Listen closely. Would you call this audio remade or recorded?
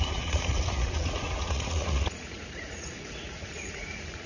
remade